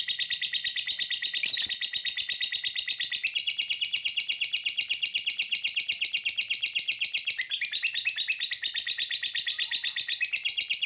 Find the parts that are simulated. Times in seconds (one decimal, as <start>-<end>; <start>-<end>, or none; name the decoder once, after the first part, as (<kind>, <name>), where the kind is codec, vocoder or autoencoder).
none